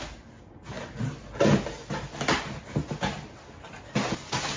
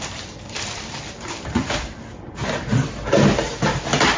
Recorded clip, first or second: first